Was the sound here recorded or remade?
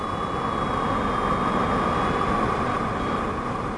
recorded